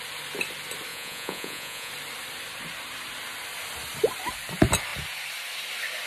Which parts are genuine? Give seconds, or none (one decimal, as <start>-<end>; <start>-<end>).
0.0-0.9; 1.9-6.1